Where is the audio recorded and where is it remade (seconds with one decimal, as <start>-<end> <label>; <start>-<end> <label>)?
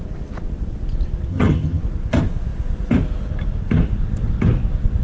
0.0-1.3 recorded; 1.3-1.8 remade; 1.8-5.0 recorded